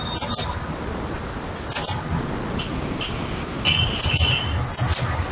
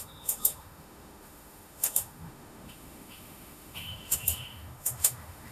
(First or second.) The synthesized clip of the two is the second